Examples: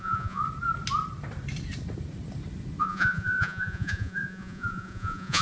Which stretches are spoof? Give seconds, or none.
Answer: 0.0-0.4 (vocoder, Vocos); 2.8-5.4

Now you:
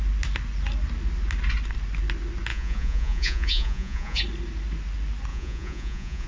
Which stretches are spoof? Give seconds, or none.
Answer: 2.5-4.2 (vocoder, Vocos); 5.3-6.3

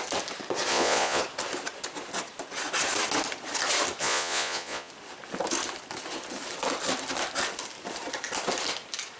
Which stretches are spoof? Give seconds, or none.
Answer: 0.7-1.2 (vocoder, Vocos); 4.0-4.9